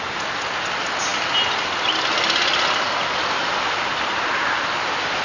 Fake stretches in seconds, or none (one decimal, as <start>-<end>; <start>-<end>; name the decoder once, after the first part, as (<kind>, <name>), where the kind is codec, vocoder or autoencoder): none

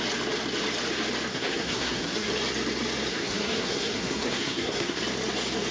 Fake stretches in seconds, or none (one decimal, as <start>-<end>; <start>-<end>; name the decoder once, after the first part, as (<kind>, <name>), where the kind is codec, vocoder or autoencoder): 1.3-2.3 (codec, SNAC); 3.1-5.0

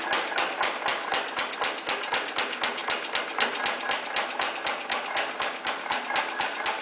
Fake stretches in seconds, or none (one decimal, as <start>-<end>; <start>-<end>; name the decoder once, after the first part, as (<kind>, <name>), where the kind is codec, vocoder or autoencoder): none

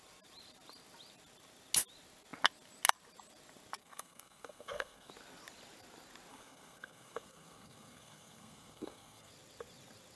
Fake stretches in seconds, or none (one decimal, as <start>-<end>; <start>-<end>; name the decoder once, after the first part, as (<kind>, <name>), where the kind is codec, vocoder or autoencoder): 3.8-5.1 (codec, SNAC); 6.3-9.3